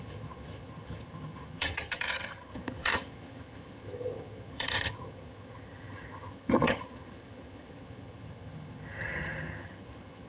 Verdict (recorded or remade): remade